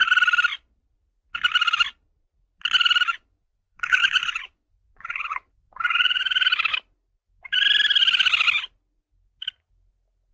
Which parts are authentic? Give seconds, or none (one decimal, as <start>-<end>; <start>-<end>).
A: 0.0-3.1; 6.3-10.3